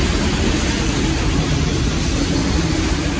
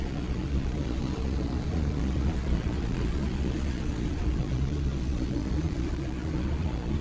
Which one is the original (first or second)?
first